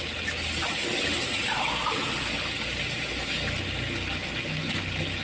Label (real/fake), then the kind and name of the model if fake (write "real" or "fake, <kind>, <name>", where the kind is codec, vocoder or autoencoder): real